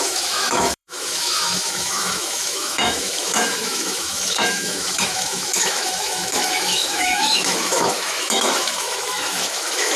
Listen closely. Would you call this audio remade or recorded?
remade